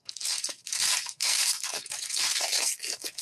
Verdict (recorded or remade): remade